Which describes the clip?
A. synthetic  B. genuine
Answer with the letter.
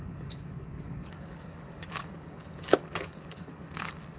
A